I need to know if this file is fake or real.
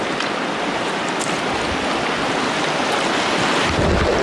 real